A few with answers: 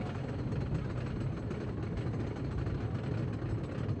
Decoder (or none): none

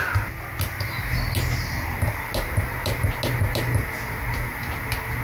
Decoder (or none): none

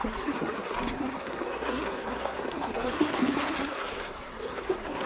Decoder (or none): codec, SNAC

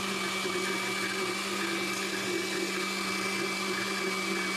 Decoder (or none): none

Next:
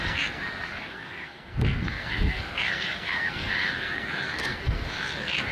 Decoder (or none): codec, SNAC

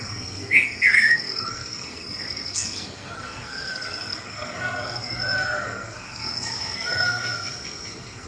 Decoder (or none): codec, SNAC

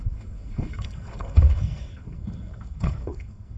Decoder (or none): codec, SNAC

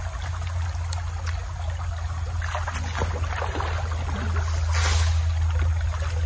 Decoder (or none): none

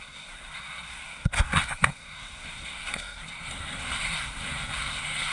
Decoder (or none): codec, SNAC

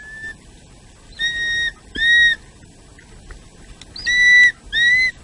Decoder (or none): none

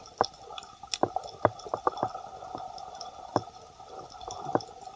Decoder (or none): none